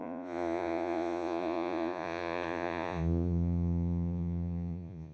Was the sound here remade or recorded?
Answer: remade